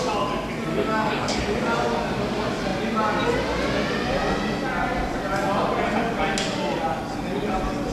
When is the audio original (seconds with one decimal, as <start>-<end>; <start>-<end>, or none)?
0.0-0.7; 1.4-7.9